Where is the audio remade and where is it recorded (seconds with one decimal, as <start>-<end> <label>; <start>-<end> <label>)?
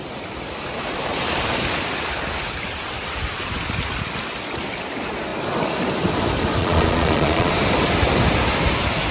0.0-6.6 recorded; 6.6-7.5 remade; 7.5-9.1 recorded